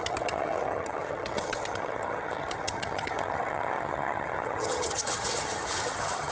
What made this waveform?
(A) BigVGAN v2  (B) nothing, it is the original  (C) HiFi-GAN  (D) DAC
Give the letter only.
C